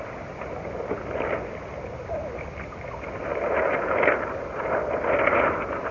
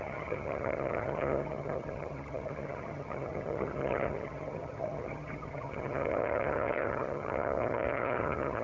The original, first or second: first